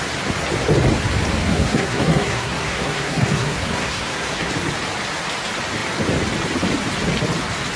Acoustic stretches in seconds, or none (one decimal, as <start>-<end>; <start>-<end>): 0.0-1.4; 4.5-7.8